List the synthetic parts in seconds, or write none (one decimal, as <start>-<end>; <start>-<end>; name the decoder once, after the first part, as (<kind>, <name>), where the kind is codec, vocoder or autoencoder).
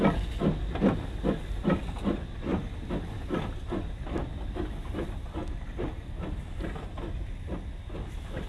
none